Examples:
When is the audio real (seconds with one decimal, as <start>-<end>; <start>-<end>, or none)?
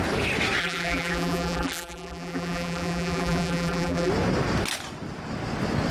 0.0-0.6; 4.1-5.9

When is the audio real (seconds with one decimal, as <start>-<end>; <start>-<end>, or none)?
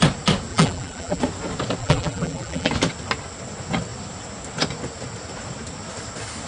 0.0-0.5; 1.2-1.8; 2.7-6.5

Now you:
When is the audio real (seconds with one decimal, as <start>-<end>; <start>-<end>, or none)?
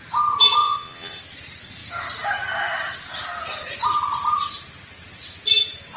0.0-0.6; 1.2-6.0